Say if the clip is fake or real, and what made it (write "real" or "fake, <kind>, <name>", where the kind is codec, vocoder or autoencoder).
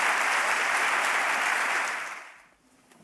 fake, vocoder, BigVGAN v2